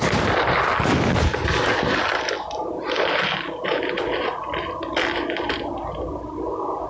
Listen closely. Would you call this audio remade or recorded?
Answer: recorded